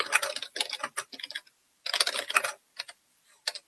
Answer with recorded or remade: recorded